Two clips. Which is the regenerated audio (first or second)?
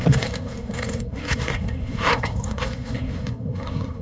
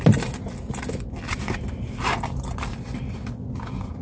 first